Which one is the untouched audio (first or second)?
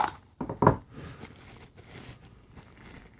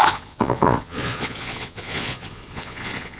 first